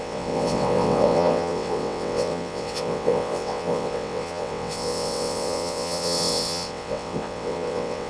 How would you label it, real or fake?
fake